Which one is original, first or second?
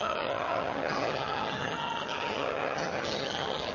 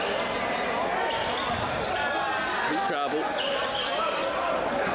second